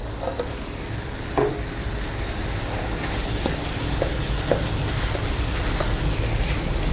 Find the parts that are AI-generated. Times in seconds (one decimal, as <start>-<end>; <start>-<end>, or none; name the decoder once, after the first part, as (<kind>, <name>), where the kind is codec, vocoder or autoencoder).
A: 3.2-3.8 (vocoder, BigVGAN v2)